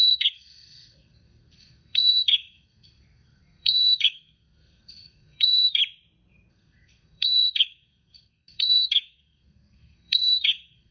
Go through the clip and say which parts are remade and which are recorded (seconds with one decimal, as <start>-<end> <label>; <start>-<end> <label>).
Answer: 0.0-5.8 remade; 5.8-6.5 recorded; 6.5-10.9 remade